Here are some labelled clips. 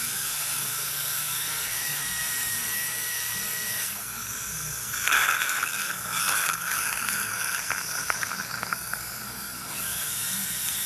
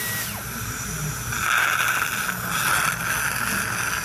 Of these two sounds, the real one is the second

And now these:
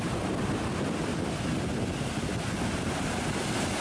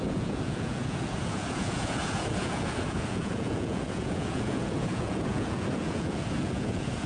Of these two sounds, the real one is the first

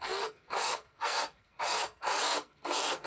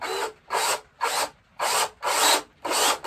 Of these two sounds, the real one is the second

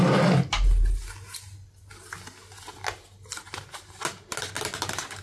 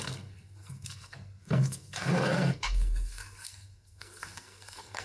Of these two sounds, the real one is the first